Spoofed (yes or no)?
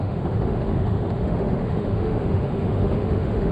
yes